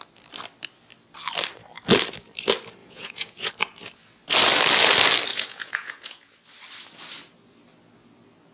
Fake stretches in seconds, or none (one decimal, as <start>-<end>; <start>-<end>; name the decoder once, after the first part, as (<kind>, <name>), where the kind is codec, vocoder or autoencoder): 2.8-3.5 (vocoder, Vocos); 5.3-6.3